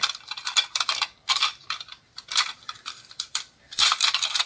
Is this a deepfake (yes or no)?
yes